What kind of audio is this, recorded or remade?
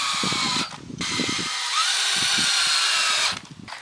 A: recorded